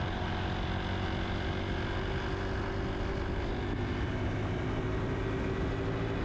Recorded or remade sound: recorded